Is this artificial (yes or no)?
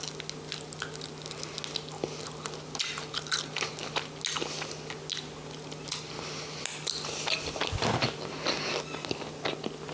no